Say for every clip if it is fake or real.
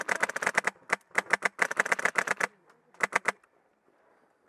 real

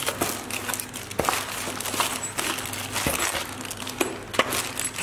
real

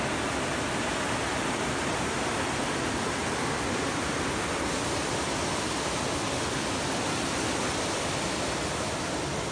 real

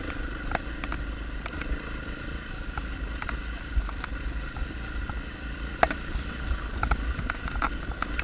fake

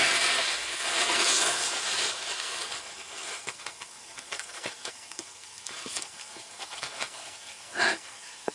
fake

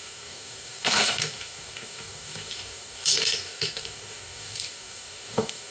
fake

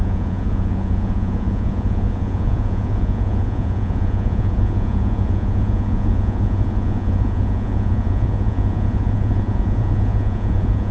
fake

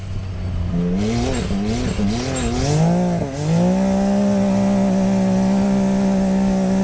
real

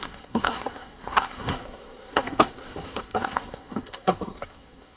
fake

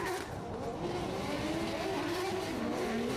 real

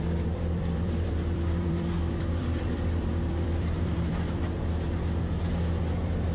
fake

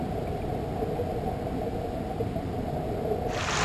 real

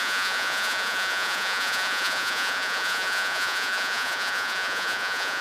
fake